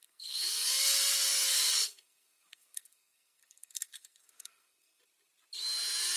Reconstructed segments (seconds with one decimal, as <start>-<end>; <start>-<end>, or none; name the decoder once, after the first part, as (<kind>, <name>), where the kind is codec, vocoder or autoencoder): 0.0-0.7 (codec, SNAC); 1.3-5.0